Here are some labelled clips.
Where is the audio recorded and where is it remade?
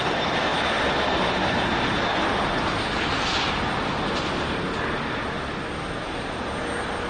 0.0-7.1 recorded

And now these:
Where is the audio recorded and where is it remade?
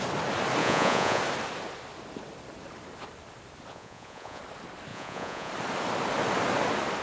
0.0-0.6 recorded; 0.6-1.2 remade; 1.2-3.7 recorded; 3.7-4.4 remade; 4.4-4.9 recorded; 4.9-5.5 remade; 5.5-7.0 recorded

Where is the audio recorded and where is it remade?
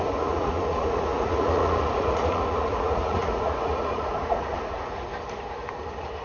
0.0-5.1 remade; 5.1-6.2 recorded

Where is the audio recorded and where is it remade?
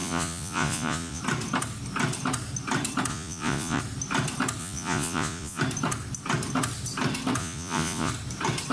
0.0-1.2 remade; 1.2-3.1 recorded; 3.1-3.8 remade; 3.8-4.6 recorded; 4.6-5.6 remade; 5.6-7.4 recorded; 7.4-8.1 remade; 8.1-8.7 recorded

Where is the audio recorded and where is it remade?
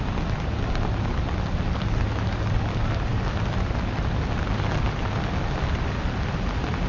0.0-6.9 recorded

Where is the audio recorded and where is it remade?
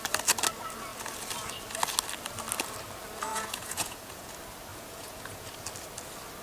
0.0-3.3 recorded; 3.3-4.3 remade; 4.3-4.7 recorded; 4.7-5.5 remade; 5.5-6.4 recorded